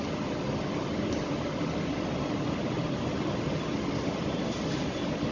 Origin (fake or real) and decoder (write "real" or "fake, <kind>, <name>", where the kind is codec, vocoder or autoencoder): real